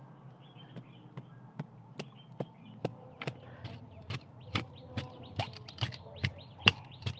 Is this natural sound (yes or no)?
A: yes